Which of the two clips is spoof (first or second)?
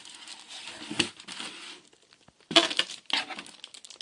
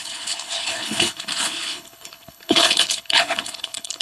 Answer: second